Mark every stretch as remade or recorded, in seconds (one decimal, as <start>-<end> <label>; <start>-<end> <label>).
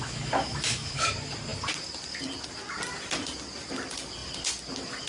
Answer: 0.0-1.1 remade; 1.1-5.1 recorded